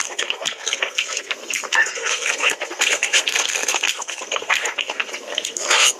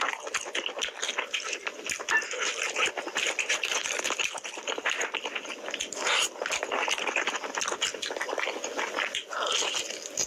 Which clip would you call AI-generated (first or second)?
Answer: first